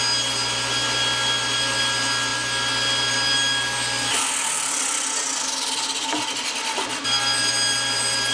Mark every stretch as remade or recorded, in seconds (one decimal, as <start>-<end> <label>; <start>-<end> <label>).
0.0-8.3 recorded